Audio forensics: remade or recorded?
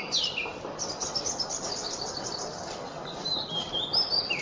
recorded